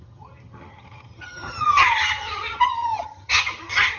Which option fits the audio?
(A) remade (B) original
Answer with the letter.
A